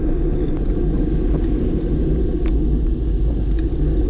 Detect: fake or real real